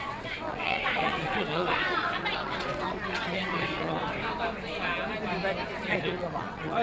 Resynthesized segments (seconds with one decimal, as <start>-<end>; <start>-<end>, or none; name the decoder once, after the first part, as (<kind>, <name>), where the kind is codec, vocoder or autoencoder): 0.0-4.0 (vocoder, WaveNeXt); 5.7-6.8